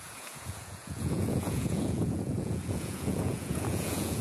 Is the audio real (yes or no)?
no